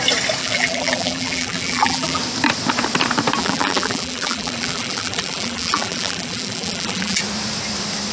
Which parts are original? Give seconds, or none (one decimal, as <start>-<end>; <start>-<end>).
0.0-0.4; 2.2-3.4; 7.2-8.1